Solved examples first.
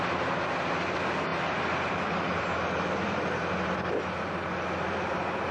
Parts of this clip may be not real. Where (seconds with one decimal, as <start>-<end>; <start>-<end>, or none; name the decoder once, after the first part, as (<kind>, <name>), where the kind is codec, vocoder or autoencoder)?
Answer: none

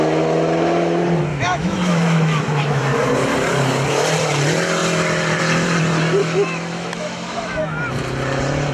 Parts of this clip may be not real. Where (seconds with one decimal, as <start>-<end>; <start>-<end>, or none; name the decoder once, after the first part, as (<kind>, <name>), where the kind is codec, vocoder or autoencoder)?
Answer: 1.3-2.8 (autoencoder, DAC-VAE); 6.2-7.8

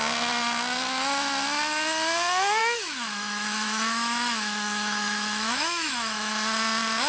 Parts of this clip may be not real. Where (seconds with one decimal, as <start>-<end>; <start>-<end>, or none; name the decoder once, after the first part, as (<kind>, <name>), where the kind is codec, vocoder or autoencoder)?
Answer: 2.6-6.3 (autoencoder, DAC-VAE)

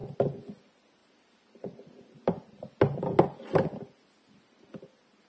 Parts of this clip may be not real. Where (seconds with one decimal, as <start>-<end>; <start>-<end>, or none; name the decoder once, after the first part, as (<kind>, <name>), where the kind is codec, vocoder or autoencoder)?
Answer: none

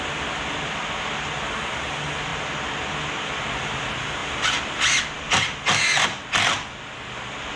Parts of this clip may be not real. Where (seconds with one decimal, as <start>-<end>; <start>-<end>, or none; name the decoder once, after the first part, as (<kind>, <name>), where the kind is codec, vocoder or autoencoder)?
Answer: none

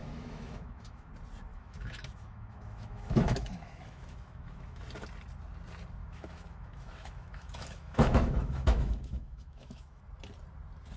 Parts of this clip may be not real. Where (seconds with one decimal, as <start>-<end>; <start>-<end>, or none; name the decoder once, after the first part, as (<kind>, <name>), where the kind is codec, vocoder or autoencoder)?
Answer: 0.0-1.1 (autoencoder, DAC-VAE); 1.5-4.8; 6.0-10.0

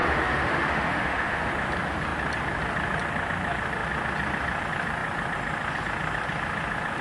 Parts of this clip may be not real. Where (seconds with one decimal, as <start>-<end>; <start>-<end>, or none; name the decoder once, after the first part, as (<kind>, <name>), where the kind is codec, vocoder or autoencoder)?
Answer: 0.0-1.5 (autoencoder, DAC-VAE)

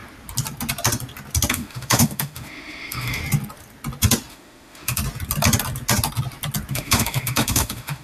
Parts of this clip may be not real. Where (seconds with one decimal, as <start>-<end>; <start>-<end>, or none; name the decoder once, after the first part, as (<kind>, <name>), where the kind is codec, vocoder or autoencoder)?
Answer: 1.5-3.2 (autoencoder, DAC-VAE); 4.3-5.0; 6.7-8.0